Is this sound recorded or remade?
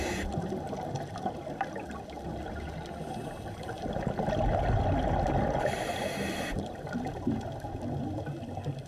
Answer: recorded